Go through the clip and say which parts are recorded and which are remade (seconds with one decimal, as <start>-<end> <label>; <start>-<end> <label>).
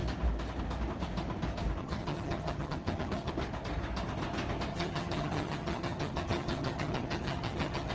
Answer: 0.0-1.8 recorded; 1.8-3.3 remade; 3.3-4.7 recorded; 4.7-7.9 remade